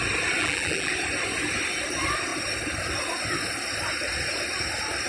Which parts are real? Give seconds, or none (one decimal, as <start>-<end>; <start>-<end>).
0.0-0.4; 0.9-5.1